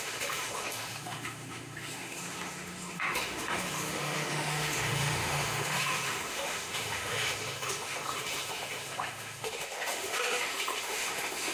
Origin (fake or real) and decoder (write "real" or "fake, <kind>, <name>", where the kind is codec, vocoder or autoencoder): fake, autoencoder, DAC-VAE